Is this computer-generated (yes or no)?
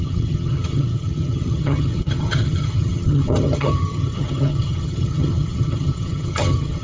yes